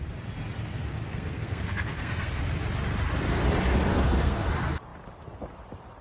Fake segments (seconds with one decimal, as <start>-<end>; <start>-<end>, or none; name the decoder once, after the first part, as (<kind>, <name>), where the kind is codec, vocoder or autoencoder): 0.7-2.4 (codec, SNAC); 3.9-4.5